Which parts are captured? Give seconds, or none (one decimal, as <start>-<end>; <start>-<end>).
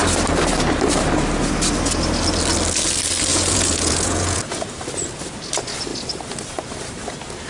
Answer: 0.0-3.3; 4.4-7.5